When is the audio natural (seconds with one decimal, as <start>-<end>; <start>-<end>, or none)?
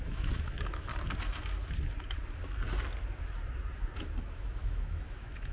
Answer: 0.9-4.2